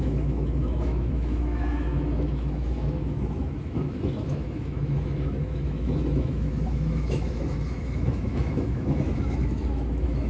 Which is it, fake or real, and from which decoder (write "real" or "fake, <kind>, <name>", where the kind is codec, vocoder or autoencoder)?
fake, autoencoder, DAC-VAE